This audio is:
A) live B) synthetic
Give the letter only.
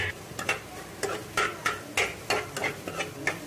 A